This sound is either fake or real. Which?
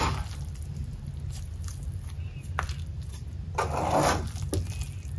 real